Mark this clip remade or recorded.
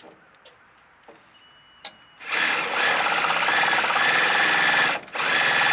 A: recorded